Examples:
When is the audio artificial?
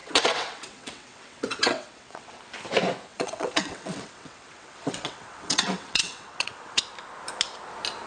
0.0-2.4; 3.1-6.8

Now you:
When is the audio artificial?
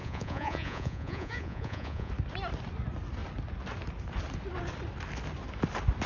0.0-2.1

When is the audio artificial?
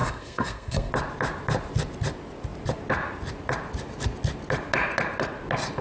0.0-0.9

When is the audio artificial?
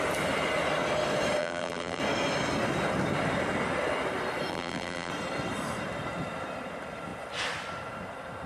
1.4-2.0; 4.5-5.1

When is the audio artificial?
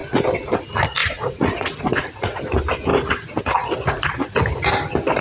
1.0-2.4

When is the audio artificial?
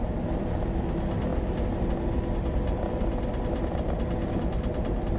none